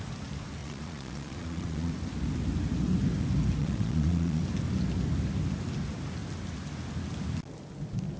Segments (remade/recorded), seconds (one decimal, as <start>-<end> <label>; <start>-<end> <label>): 0.0-0.6 recorded; 0.6-1.9 remade; 1.9-3.6 recorded; 3.6-4.4 remade; 4.4-8.2 recorded